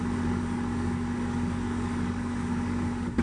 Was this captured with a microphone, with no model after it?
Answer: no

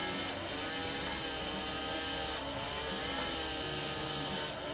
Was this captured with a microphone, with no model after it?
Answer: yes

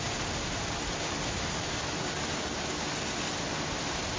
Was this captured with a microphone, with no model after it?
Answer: yes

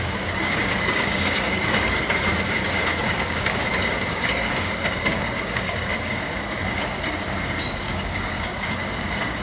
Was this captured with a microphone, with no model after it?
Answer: no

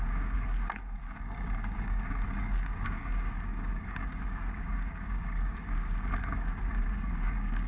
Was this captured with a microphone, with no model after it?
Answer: no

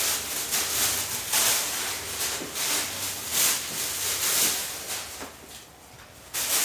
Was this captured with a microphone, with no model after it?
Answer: yes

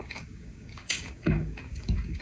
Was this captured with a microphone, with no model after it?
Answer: no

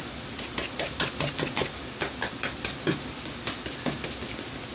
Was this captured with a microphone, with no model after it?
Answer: yes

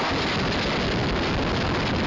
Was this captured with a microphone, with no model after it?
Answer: yes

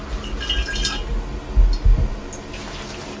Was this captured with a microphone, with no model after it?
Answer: yes